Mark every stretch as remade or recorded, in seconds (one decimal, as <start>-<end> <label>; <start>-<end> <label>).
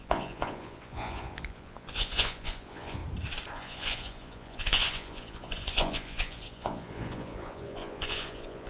0.0-3.0 remade; 3.0-3.5 recorded; 3.5-8.7 remade